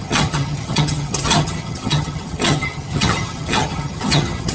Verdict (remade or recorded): remade